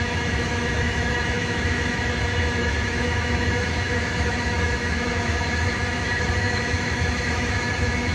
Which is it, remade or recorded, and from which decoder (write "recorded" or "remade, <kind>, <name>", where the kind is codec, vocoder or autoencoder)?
remade, autoencoder, DAC-VAE